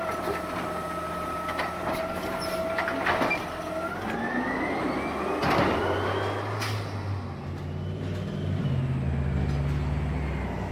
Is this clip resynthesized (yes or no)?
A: no